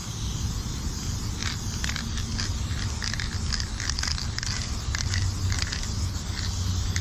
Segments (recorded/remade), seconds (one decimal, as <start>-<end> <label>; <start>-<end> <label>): 0.0-7.0 recorded

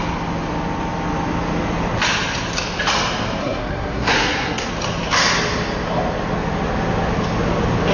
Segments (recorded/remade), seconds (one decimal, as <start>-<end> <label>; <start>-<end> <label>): 0.0-3.4 recorded; 3.4-4.7 remade; 4.7-7.9 recorded

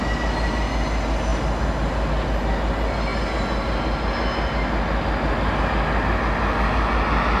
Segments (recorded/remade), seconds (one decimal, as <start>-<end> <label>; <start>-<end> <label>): 0.0-7.4 recorded

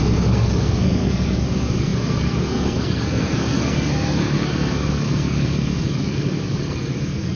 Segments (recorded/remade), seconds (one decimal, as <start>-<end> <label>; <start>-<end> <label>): 0.0-7.4 remade

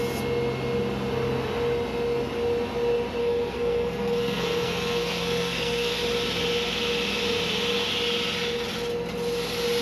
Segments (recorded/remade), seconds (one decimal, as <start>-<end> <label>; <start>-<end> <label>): 0.0-3.2 recorded; 3.2-6.0 remade; 6.0-9.8 recorded